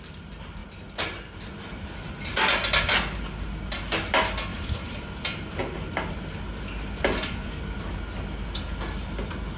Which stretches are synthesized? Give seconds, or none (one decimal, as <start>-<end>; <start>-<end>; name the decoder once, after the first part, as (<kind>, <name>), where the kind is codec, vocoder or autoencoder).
none